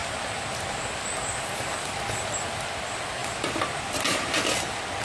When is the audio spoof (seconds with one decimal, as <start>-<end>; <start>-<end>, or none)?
none